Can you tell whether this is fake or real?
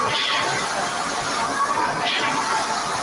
real